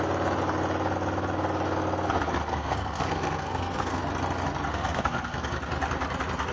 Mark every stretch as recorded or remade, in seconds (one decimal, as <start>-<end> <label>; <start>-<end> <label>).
0.0-2.5 recorded; 2.5-4.0 remade; 4.0-4.7 recorded; 4.7-5.5 remade; 5.5-6.5 recorded